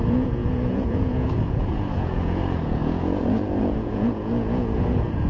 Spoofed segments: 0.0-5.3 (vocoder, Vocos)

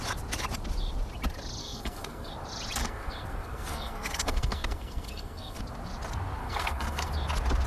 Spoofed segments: 1.6-2.3 (codec, SNAC); 2.8-5.6; 6.4-7.1

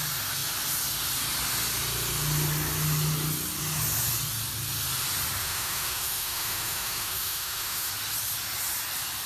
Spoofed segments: 5.4-7.9 (autoencoder, DAC-VAE)

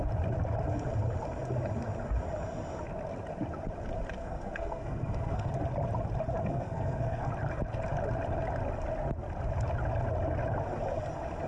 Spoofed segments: 4.2-5.5 (codec, SNAC); 6.4-7.3

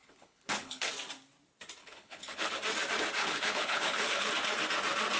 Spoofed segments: 0.0-0.9 (codec, HILCodec); 1.8-2.5; 3.2-4.3

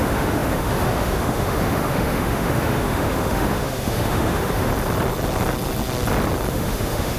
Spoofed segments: 0.0-4.7 (autoencoder, DAC-VAE); 6.5-7.2